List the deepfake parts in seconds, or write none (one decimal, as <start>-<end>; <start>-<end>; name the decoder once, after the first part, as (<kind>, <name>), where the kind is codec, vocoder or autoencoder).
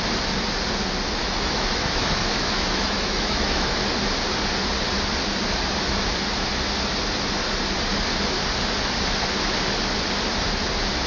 1.2-3.9 (autoencoder, DAC-VAE)